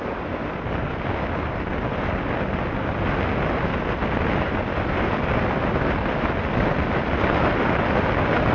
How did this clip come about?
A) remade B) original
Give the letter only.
B